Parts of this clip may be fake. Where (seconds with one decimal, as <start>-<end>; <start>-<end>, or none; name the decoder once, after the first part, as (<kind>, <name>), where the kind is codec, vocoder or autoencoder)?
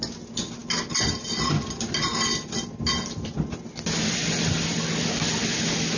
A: none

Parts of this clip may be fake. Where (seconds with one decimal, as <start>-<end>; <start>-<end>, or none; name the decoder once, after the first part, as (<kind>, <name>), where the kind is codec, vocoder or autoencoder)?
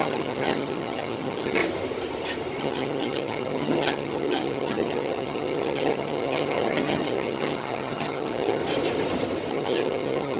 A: 0.0-1.6 (vocoder, HiFi-GAN); 2.6-8.6; 9.5-10.4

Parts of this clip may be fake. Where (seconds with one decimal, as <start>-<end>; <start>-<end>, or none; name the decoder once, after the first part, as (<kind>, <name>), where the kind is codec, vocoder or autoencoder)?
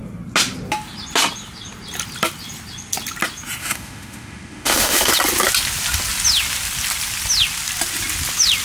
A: 3.6-5.1 (autoencoder, DAC-VAE)